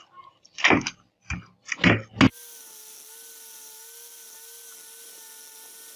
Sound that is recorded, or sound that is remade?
recorded